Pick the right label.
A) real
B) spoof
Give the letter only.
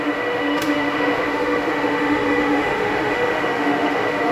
B